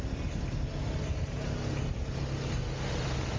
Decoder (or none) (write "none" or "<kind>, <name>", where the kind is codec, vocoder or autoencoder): none